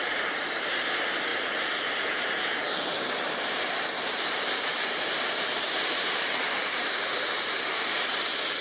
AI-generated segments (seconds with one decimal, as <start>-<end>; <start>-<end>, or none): 0.0-8.6

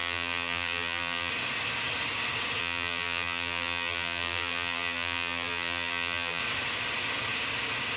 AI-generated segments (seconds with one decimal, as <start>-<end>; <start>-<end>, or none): 0.0-1.3; 2.6-6.4

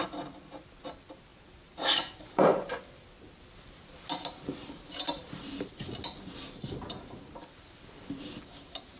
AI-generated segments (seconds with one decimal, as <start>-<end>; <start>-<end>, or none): 1.3-2.8; 6.8-7.3

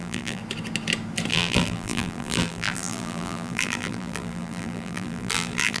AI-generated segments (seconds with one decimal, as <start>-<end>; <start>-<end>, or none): 0.0-0.4; 1.3-5.8

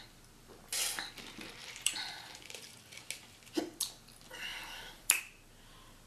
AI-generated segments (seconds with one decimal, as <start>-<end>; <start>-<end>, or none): 1.6-3.0; 4.5-5.2

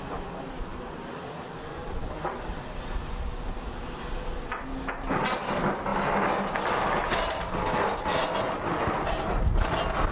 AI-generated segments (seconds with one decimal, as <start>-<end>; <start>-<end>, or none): none

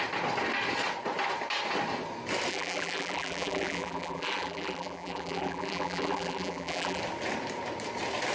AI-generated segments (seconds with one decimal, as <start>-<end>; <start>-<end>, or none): 2.5-7.0

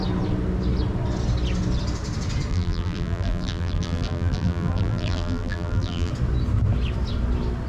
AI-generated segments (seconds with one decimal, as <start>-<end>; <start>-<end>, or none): 2.5-6.1